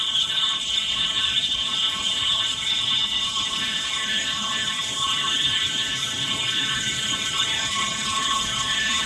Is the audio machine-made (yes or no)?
yes